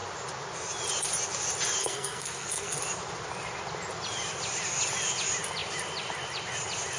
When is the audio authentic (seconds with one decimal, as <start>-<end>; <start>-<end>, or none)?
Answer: 0.0-1.8; 2.8-7.0